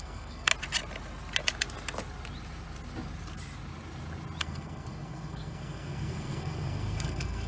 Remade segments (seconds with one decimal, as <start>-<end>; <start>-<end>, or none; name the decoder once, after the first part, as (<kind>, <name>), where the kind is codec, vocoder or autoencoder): 0.0-0.5 (codec, SNAC); 4.4-7.5